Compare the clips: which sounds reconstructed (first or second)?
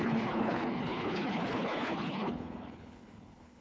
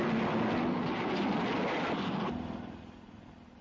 first